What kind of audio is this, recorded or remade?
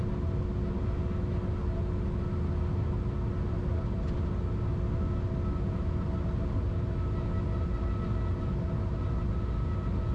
recorded